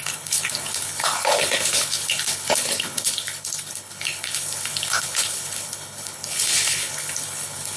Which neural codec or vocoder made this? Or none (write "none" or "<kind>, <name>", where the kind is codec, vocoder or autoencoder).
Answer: codec, HILCodec